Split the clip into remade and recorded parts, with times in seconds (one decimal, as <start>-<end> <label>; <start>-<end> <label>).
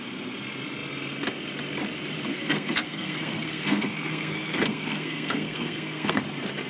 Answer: 0.0-2.3 recorded; 2.3-6.2 remade; 6.2-6.7 recorded